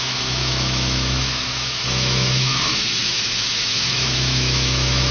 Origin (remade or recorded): remade